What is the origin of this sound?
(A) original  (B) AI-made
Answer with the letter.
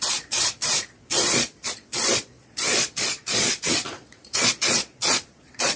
B